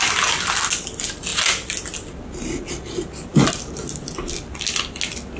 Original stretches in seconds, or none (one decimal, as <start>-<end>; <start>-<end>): 0.0-5.4